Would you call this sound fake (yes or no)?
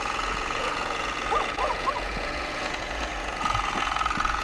yes